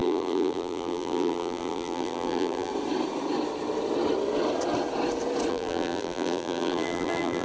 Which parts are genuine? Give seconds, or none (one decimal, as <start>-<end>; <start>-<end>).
2.7-5.5